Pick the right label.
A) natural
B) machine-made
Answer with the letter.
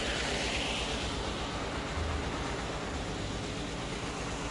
A